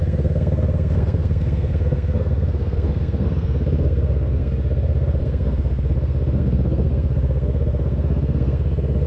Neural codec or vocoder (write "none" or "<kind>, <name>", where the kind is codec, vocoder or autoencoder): codec, SNAC